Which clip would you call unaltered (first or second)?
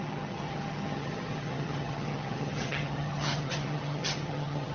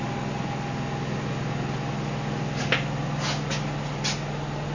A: second